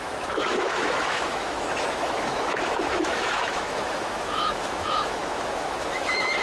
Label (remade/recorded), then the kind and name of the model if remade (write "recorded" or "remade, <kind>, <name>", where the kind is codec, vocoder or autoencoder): remade, autoencoder, DAC-VAE